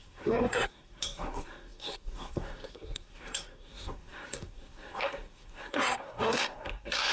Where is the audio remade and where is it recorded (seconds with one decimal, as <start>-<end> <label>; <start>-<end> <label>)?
0.0-7.1 remade